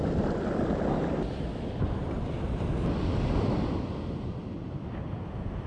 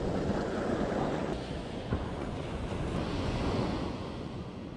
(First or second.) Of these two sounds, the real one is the first